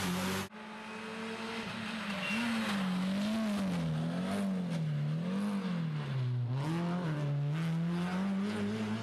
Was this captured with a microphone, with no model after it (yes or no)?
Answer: yes